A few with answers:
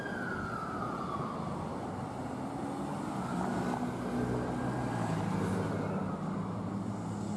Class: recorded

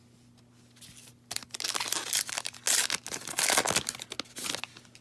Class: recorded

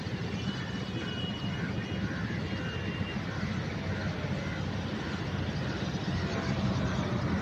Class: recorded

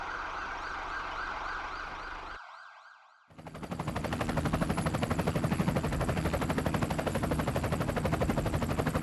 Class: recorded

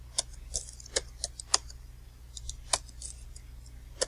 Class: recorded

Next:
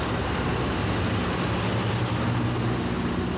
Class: recorded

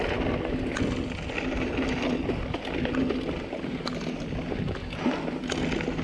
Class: recorded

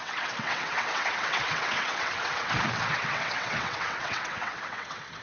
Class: remade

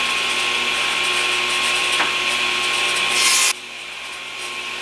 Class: recorded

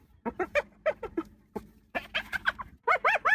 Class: remade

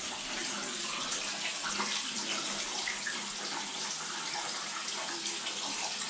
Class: recorded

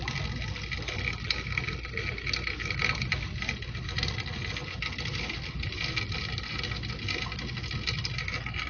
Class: recorded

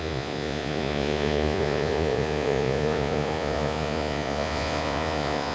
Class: remade